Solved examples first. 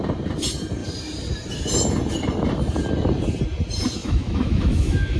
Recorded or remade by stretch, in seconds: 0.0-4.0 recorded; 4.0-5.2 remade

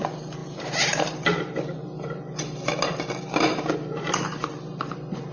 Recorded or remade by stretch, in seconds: 0.0-0.4 recorded; 0.4-2.4 remade; 2.4-5.3 recorded